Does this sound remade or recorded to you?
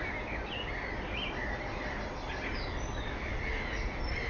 recorded